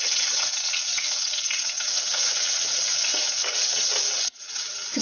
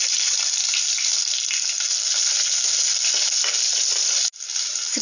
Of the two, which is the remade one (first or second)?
first